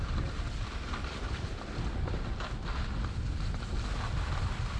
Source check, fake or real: real